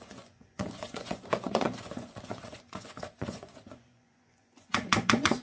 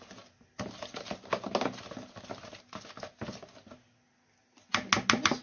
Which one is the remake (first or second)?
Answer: first